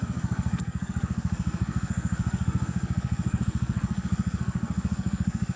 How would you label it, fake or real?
fake